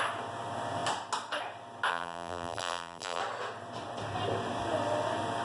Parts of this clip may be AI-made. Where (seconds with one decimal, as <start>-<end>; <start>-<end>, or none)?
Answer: 1.9-3.2